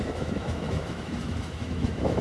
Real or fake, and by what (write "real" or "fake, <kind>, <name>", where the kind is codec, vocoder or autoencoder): fake, autoencoder, DAC-VAE